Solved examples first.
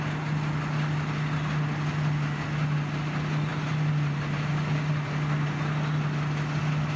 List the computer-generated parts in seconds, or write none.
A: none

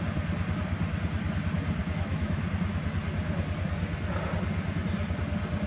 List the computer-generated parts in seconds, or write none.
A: 1.8-2.4 (autoencoder, DAC-VAE)

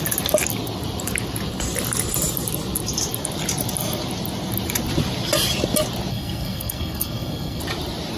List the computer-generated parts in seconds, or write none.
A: 6.1-7.6 (codec, SNAC)